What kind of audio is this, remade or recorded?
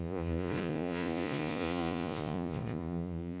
remade